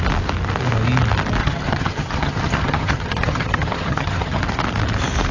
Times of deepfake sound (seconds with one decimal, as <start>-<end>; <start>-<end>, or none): 1.4-4.4